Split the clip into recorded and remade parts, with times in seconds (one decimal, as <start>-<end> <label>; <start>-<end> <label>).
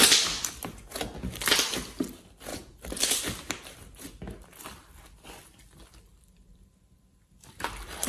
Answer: 0.0-2.5 recorded; 2.5-3.2 remade; 3.2-6.1 recorded; 6.1-8.1 remade